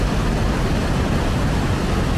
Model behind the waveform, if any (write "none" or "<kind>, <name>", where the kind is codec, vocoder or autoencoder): none